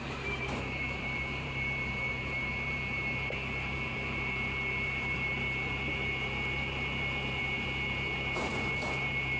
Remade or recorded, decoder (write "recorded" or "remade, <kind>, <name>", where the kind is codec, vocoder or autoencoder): remade, vocoder, BigVGAN v2